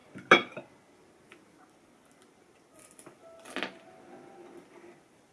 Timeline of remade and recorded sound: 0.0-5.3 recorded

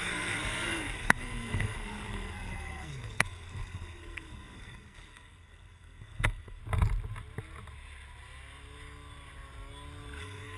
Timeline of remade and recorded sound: 0.0-6.6 remade; 6.6-10.2 recorded; 10.2-10.6 remade